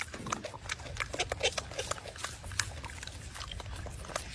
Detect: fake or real real